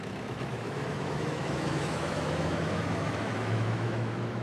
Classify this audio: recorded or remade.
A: remade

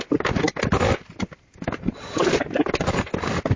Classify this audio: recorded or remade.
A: recorded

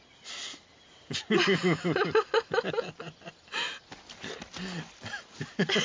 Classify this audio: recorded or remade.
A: recorded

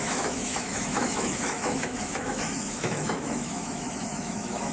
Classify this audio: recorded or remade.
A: remade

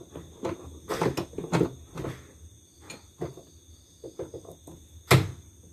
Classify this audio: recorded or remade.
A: recorded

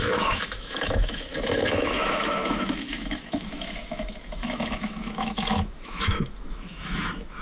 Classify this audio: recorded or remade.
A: remade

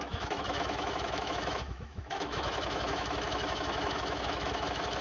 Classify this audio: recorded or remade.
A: remade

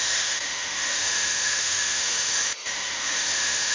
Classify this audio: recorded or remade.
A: remade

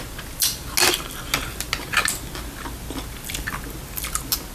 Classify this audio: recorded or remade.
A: recorded